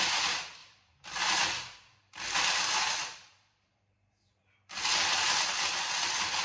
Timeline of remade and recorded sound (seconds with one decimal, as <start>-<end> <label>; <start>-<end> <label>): 0.0-0.6 recorded; 0.6-4.4 remade; 4.4-6.4 recorded